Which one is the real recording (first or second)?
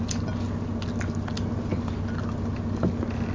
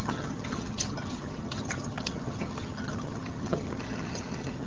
first